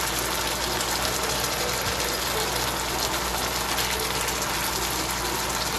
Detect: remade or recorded recorded